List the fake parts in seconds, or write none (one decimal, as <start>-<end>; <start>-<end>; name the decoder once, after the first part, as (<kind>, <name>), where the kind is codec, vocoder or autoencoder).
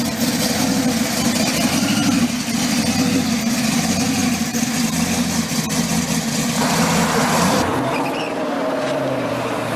7.7-9.8 (vocoder, BigVGAN v2)